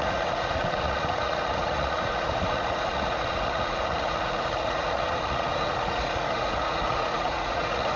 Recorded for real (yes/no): no